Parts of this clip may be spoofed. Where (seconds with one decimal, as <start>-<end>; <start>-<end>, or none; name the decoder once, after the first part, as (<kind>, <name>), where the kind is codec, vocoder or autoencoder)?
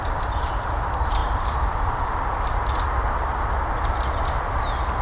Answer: none